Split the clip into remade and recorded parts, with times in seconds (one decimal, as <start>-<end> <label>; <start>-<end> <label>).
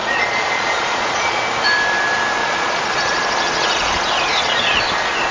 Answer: 0.0-1.4 remade; 1.4-2.4 recorded; 2.4-4.8 remade; 4.8-5.3 recorded